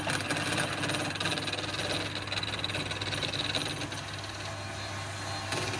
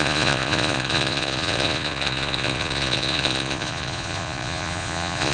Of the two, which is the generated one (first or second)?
second